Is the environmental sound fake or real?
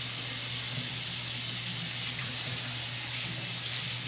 real